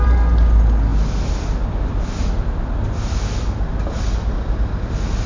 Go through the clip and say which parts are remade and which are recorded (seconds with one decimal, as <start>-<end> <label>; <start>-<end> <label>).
0.0-5.3 recorded